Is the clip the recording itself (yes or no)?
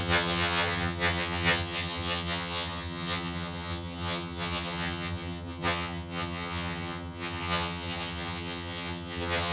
no